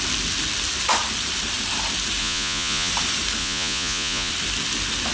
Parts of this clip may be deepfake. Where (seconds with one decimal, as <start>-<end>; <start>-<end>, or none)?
2.2-2.9; 3.4-4.3